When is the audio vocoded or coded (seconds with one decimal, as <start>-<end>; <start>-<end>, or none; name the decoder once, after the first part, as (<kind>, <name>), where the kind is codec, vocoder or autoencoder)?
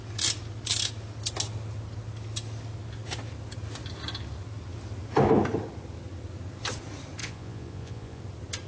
7.2-8.2 (vocoder, Vocos)